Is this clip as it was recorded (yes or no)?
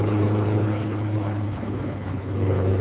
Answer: no